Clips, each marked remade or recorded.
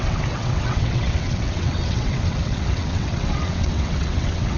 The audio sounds remade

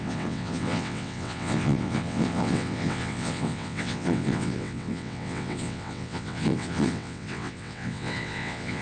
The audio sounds remade